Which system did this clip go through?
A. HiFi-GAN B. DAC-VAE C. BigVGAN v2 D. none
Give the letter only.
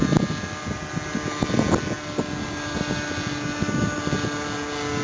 D